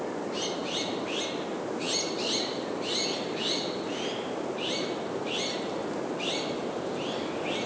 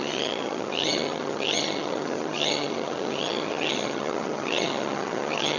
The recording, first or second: first